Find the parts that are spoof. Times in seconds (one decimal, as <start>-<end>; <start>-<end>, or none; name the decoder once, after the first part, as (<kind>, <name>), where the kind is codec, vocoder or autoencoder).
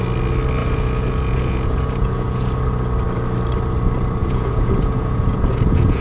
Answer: 0.6-2.5 (vocoder, Vocos); 4.2-6.0